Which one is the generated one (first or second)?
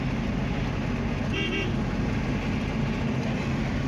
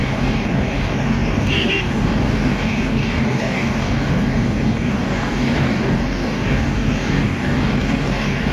second